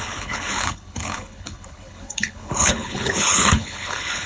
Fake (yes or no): yes